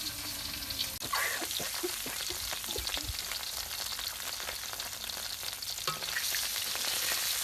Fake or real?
real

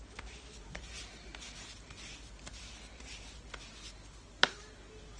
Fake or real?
real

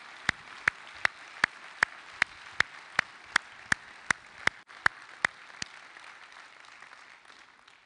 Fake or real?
real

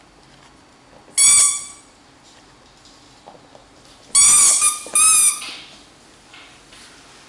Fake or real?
real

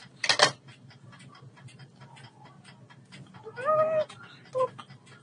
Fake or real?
real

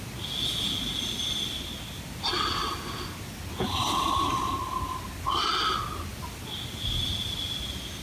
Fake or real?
real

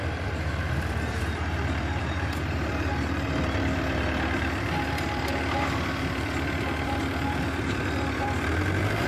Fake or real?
fake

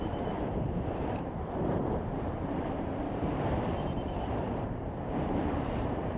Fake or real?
fake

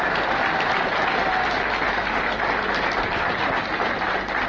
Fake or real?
real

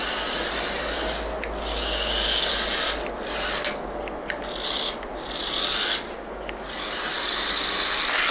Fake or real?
real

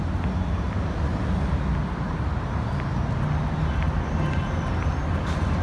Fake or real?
real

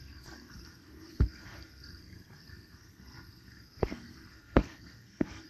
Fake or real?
fake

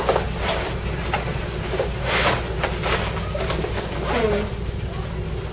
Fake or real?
real